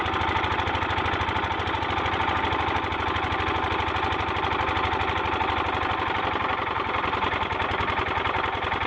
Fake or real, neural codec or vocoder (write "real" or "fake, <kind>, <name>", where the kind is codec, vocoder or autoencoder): real